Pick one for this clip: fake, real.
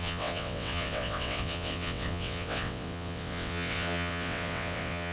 fake